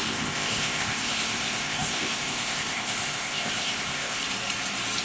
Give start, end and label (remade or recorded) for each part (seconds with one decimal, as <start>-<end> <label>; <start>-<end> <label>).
0.0-4.2 remade; 4.2-5.0 recorded

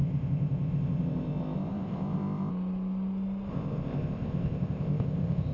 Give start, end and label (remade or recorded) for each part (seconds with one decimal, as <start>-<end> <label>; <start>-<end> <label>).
0.0-2.5 remade; 2.5-3.5 recorded; 3.5-5.5 remade

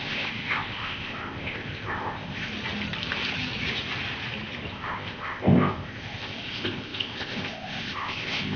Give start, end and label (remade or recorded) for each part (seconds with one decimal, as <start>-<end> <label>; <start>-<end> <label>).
0.0-2.5 remade; 2.5-4.7 recorded; 4.7-8.6 remade

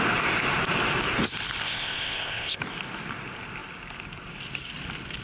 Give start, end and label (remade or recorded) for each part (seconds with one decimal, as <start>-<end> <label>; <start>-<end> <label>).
0.0-1.6 recorded; 1.6-2.6 remade; 2.6-5.2 recorded

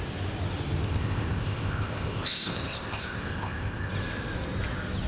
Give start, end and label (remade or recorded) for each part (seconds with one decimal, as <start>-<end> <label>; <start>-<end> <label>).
0.0-0.8 recorded; 0.8-3.9 remade; 3.9-5.1 recorded

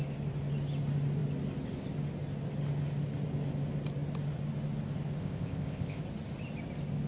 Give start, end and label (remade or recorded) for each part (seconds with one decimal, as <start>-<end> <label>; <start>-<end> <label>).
0.0-5.2 recorded; 5.2-6.0 remade; 6.0-7.1 recorded